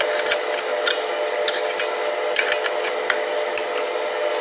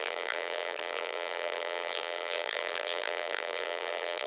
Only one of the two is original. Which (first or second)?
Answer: first